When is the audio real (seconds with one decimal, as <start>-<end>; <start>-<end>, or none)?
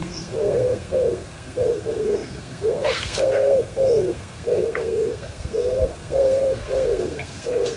none